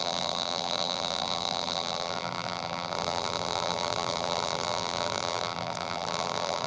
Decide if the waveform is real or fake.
fake